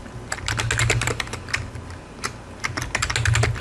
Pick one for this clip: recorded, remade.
recorded